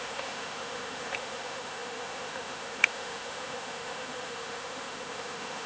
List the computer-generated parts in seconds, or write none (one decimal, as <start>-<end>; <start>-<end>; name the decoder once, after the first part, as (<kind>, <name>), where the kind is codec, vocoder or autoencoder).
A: 0.0-5.7 (autoencoder, DAC-VAE)